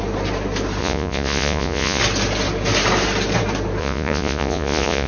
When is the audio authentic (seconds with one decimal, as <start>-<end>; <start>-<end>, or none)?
0.0-0.8; 2.0-3.8